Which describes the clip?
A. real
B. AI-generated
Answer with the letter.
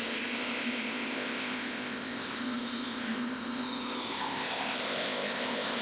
B